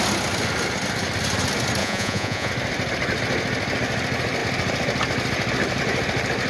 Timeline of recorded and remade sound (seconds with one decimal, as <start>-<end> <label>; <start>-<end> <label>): 0.0-1.8 recorded; 1.8-2.5 remade; 2.5-6.5 recorded